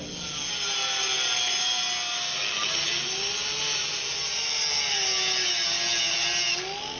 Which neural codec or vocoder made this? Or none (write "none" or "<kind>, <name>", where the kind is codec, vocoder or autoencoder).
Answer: none